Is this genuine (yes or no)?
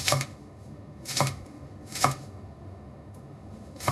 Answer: no